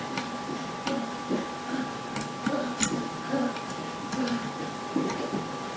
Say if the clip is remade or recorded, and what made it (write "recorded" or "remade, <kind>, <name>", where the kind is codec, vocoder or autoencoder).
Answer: recorded